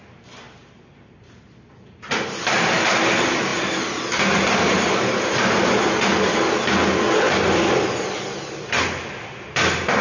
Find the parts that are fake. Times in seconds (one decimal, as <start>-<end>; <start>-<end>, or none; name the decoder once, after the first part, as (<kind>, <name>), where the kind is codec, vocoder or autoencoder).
none